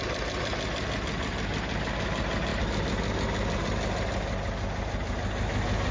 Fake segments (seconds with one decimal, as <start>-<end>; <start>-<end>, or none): none